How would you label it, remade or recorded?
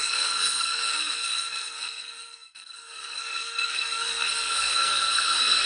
remade